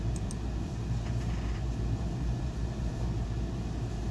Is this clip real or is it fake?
fake